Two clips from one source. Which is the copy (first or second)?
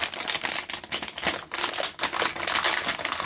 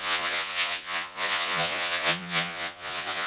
second